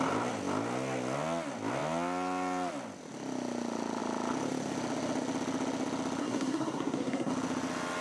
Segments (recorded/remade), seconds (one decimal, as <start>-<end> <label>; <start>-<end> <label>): 0.0-6.2 recorded; 6.2-7.3 remade; 7.3-8.0 recorded